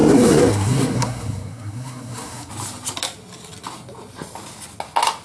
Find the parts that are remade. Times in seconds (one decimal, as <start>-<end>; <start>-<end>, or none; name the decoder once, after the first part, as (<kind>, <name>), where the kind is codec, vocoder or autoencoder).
0.0-2.5 (codec, SNAC)